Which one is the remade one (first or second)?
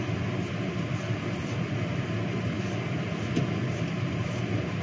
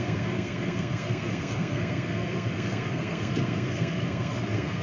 second